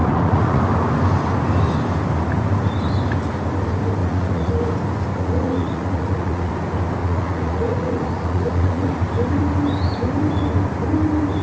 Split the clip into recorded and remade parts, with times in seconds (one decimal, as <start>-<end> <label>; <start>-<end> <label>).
0.0-0.6 remade; 0.6-4.0 recorded; 4.0-4.5 remade; 4.5-5.1 recorded; 5.1-6.5 remade; 6.5-7.0 recorded; 7.0-8.9 remade; 8.9-11.4 recorded